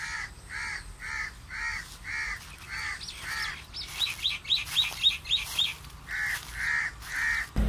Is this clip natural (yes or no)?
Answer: yes